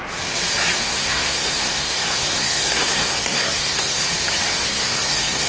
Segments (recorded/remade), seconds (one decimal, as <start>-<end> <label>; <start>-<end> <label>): 0.0-0.8 recorded; 0.8-4.1 remade; 4.1-4.6 recorded; 4.6-5.5 remade